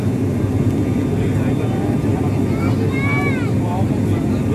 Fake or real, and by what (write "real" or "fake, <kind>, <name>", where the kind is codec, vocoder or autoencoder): real